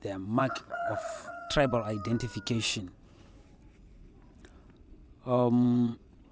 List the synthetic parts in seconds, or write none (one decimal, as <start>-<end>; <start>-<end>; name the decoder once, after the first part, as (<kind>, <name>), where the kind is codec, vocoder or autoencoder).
0.4-1.7 (vocoder, WaveNeXt); 5.0-6.3